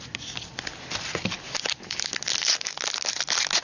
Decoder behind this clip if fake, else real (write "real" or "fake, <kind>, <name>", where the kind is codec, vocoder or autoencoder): real